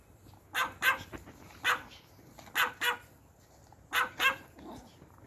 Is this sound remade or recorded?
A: recorded